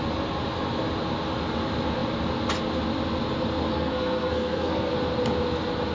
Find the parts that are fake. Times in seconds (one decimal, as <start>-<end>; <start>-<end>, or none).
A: 3.7-4.9